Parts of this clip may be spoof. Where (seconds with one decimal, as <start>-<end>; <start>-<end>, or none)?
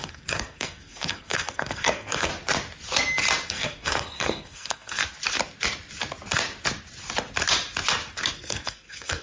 0.0-2.3; 3.5-5.0; 8.3-9.2